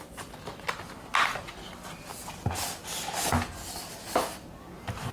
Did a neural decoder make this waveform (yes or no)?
no